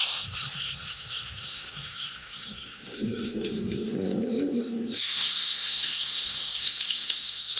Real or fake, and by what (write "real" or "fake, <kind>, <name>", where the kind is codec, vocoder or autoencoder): fake, codec, SNAC